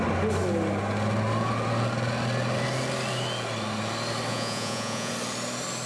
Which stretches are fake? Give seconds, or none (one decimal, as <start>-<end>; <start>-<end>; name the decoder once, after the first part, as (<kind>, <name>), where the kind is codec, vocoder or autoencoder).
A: 4.3-5.1 (vocoder, Vocos)